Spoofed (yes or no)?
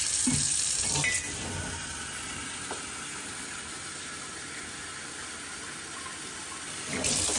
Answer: no